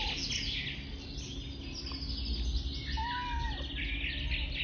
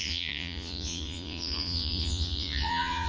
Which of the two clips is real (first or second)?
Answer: first